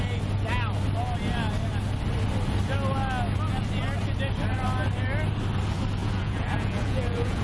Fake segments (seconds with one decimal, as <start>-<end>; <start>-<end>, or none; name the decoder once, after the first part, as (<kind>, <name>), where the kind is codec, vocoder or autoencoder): 6.0-7.4 (vocoder, Vocos)